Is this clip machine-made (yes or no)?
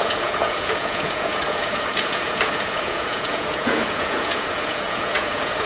yes